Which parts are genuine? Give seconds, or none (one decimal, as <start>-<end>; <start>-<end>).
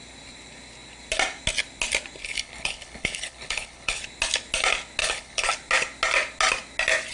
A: 0.0-2.2; 4.0-5.0; 5.5-7.1